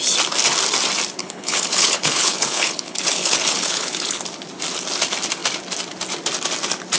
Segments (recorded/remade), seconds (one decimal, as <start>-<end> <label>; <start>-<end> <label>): 0.0-1.2 recorded; 1.2-4.2 remade; 4.2-7.0 recorded